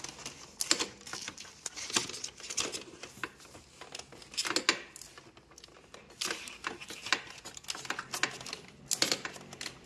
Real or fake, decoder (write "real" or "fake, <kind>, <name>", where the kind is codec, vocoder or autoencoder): real